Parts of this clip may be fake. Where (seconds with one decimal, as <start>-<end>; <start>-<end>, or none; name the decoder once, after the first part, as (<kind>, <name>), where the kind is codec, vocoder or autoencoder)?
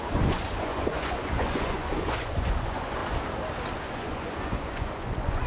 0.0-3.0 (vocoder, Vocos); 3.9-5.5